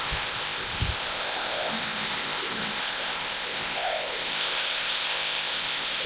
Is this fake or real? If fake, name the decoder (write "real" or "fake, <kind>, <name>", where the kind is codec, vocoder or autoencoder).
fake, codec, ZipCodec